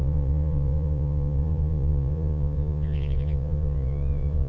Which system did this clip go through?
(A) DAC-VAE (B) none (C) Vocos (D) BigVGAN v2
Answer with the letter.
C